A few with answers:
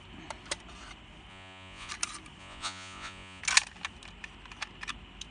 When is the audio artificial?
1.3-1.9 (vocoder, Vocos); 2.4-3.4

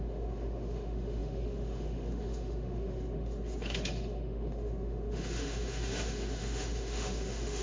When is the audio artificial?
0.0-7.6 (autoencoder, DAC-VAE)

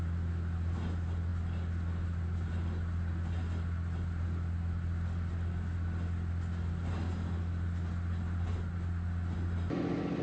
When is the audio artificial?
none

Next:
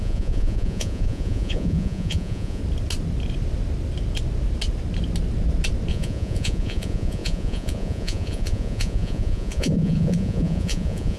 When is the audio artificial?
0.0-2.6 (vocoder, Vocos); 5.9-11.2